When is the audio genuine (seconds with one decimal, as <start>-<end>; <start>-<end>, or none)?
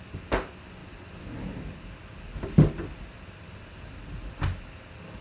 0.0-5.2